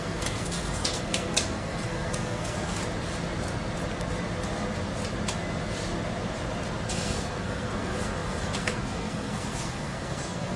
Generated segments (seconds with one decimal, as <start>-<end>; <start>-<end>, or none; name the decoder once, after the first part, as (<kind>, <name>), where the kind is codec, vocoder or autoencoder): 0.0-2.8 (codec, SNAC); 6.9-10.6